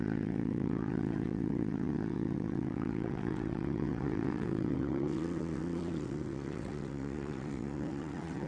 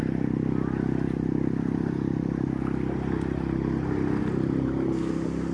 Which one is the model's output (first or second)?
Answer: first